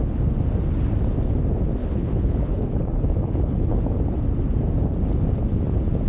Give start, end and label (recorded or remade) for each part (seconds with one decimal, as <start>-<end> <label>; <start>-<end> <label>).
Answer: 0.0-1.8 recorded; 1.8-3.8 remade; 3.8-6.1 recorded